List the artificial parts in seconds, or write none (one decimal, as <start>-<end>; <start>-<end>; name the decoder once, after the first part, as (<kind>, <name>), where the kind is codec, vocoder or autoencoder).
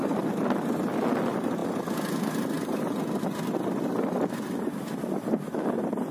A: none